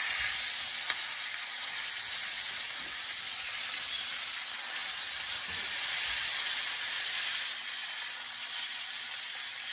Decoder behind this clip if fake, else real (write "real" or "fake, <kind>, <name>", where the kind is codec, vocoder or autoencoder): real